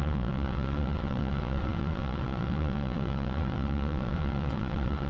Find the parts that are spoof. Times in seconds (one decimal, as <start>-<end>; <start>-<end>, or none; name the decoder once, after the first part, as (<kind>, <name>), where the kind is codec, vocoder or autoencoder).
0.0-5.1 (vocoder, WaveNeXt)